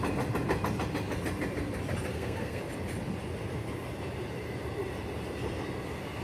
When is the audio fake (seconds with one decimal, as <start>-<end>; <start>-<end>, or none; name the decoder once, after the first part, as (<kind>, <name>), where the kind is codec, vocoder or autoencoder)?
2.1-2.6 (codec, SNAC)

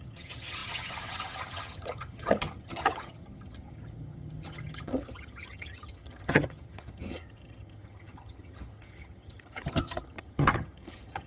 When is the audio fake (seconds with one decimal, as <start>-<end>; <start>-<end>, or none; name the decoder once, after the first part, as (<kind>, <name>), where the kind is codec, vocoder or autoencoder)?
0.0-11.3 (vocoder, HiFi-GAN)